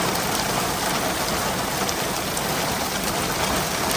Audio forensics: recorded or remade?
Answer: recorded